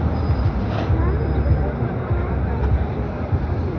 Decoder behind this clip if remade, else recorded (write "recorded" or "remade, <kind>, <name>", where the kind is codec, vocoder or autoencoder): recorded